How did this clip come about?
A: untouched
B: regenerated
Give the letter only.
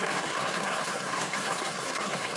B